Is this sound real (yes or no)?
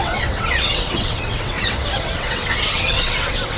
no